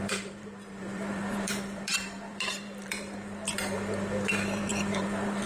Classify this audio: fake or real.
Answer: fake